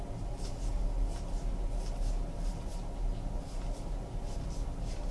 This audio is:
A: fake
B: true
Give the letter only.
B